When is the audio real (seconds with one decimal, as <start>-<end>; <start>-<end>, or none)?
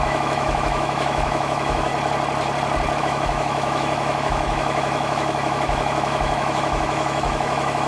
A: 1.9-3.0